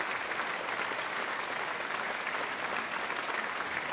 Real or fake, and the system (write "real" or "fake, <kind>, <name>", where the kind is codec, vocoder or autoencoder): real